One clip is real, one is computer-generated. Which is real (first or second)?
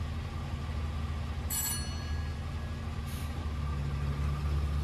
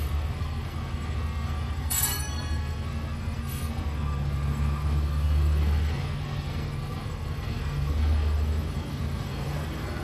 first